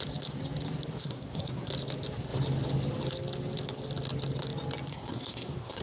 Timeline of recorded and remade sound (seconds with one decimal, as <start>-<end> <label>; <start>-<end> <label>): 0.0-1.0 recorded; 1.0-1.7 remade; 1.7-4.9 recorded; 4.9-5.8 remade